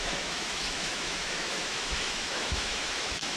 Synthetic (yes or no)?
yes